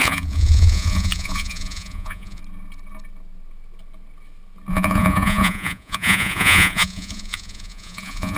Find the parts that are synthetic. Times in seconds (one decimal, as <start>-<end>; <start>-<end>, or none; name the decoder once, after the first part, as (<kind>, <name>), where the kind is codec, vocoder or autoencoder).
0.0-2.4 (vocoder, Vocos); 4.7-8.4